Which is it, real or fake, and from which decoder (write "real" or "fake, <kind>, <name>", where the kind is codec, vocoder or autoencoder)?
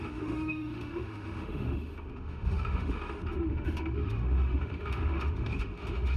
fake, autoencoder, DAC-VAE